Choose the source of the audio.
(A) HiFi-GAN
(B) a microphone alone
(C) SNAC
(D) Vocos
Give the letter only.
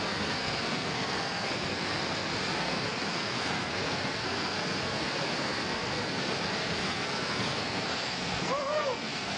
C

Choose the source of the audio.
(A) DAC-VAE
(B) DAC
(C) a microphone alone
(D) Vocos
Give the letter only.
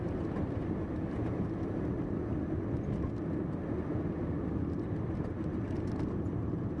C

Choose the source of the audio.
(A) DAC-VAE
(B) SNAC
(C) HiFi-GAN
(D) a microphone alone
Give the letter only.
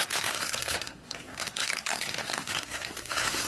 B